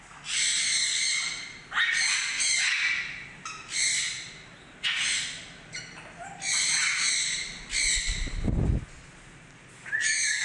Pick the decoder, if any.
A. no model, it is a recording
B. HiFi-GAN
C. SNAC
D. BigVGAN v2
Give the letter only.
A